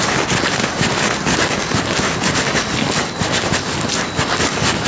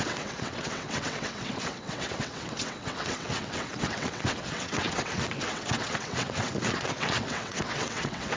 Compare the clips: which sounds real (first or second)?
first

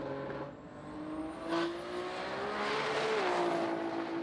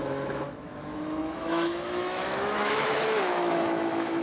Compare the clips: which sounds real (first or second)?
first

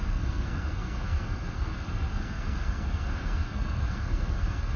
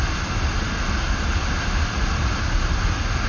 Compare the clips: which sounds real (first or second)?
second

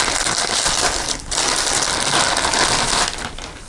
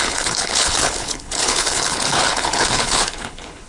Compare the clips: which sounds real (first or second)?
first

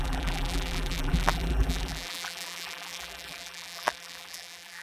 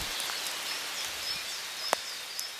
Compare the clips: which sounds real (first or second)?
second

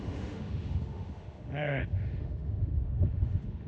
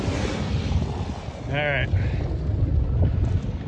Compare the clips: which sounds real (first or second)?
second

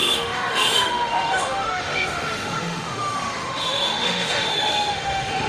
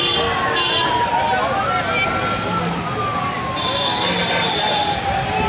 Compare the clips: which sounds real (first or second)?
second